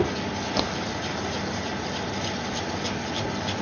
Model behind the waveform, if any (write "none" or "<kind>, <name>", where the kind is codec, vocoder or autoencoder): none